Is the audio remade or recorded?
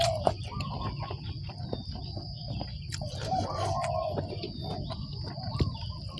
recorded